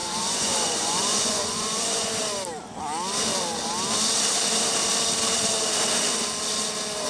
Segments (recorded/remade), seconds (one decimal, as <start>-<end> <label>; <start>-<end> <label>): 0.0-2.1 remade; 2.1-7.1 recorded